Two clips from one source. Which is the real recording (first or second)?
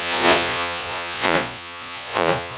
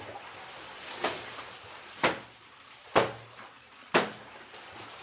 second